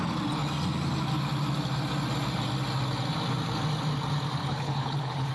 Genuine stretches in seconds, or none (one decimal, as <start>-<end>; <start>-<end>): 0.0-4.4